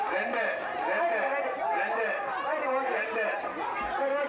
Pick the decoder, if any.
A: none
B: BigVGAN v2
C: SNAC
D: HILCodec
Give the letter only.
A